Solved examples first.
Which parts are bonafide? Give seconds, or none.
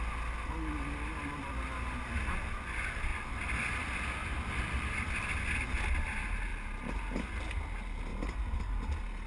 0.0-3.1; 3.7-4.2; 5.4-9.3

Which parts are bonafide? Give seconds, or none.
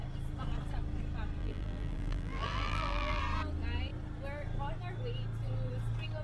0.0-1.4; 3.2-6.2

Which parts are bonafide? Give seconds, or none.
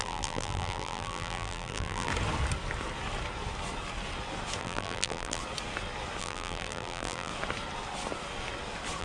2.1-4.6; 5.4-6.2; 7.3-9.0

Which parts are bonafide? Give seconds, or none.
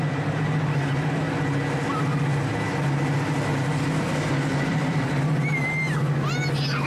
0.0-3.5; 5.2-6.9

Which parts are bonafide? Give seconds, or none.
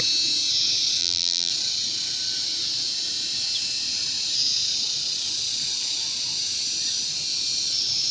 0.0-1.0; 1.5-8.1